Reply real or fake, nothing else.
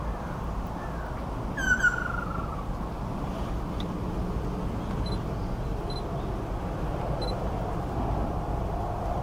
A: real